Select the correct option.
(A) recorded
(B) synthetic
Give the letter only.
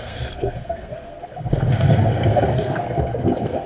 B